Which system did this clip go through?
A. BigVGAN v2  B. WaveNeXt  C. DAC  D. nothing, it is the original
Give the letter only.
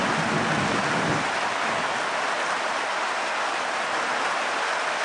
D